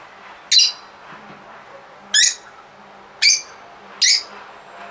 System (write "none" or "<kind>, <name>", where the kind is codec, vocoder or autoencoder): none